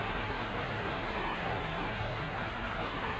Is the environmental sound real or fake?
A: fake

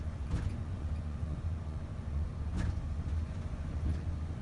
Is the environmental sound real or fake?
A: fake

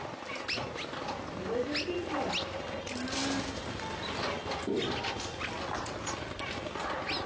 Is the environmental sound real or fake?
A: real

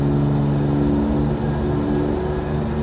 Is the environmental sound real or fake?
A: real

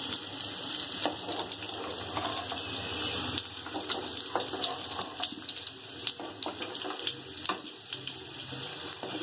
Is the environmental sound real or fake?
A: real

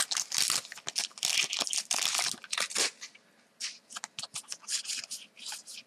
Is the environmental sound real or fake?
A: real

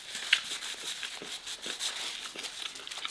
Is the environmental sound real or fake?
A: real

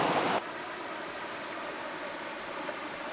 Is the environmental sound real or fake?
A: real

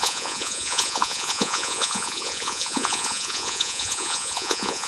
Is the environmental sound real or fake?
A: fake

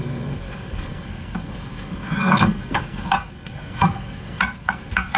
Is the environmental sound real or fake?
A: fake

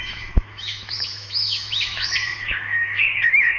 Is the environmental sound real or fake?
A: fake